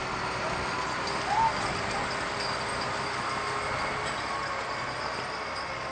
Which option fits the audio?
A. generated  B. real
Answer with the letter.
B